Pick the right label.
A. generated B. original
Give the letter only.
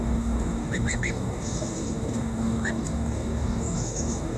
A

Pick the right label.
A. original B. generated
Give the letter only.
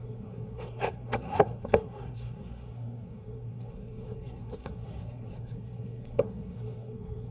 B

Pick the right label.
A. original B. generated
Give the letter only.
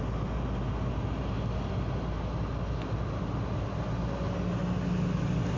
A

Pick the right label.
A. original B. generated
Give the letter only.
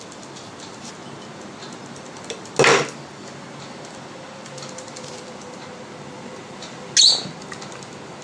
A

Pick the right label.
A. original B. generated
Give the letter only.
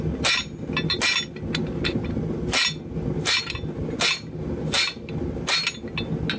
A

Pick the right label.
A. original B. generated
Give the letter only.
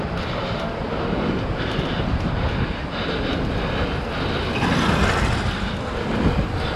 A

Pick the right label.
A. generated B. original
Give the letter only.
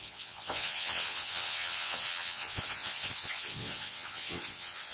A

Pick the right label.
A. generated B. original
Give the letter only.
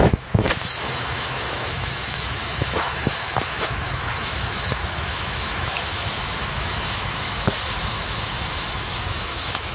A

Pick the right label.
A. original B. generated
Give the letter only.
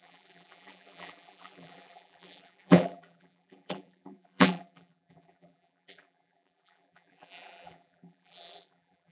B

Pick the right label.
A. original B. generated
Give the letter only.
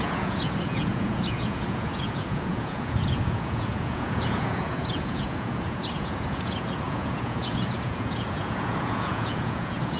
B